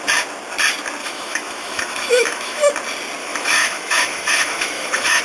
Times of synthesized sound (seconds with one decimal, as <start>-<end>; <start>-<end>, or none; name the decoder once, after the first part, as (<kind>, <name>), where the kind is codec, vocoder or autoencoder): 1.0-2.7 (autoencoder, DAC-VAE); 3.2-5.2